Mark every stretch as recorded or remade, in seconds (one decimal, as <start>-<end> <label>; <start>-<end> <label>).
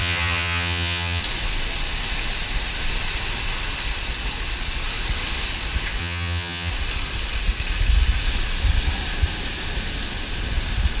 0.0-1.2 remade; 1.2-6.0 recorded; 6.0-6.7 remade; 6.7-11.0 recorded